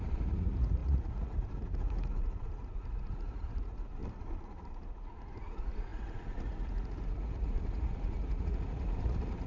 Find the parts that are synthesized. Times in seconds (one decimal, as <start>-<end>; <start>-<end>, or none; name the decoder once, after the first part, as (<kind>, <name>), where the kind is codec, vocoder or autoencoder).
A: 0.0-4.0 (vocoder, Vocos); 4.7-9.5